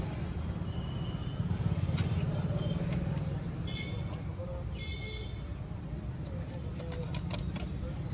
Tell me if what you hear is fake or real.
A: real